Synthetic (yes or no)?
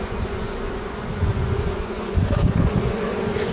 yes